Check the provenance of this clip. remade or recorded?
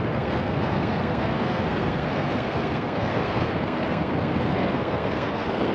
remade